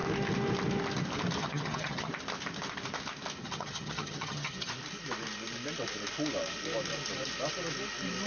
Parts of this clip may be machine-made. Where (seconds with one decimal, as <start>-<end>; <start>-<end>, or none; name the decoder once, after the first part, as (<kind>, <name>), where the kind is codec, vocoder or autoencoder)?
1.4-2.1 (vocoder, HiFi-GAN); 3.4-4.7